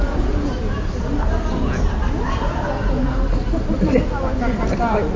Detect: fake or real real